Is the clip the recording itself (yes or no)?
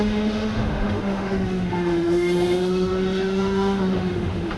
no